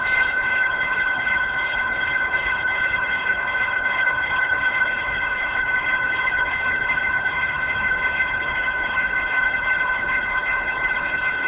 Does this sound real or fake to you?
fake